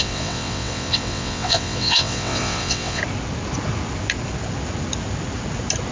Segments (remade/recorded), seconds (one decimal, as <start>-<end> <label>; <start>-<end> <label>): 0.0-3.0 remade; 3.0-5.9 recorded